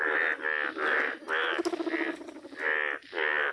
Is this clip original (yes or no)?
yes